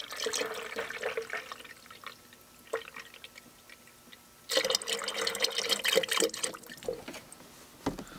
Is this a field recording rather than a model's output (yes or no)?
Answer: yes